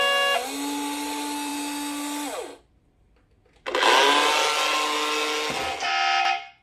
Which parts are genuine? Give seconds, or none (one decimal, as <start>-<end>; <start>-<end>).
0.0-6.6

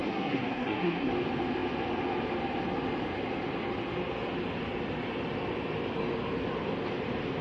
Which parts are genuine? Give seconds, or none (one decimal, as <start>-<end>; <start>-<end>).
1.1-7.4

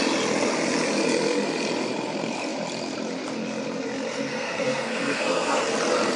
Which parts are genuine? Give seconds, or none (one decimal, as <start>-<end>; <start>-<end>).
0.0-4.3; 5.6-6.2

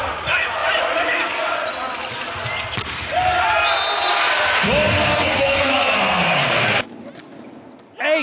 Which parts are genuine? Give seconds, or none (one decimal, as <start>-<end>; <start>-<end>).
0.0-5.1; 6.4-8.2

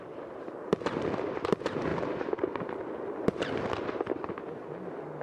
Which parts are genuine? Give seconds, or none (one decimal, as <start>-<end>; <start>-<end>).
0.0-5.2

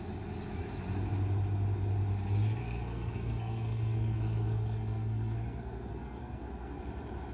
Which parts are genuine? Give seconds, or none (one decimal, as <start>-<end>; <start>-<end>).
0.0-2.6; 6.8-7.3

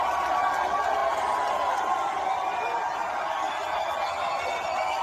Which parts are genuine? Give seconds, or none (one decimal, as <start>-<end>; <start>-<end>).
0.0-5.0

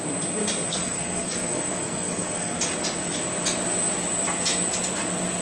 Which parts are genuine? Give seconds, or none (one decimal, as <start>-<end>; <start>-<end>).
0.0-0.7; 2.6-5.4